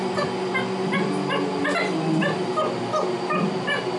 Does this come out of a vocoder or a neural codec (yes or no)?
no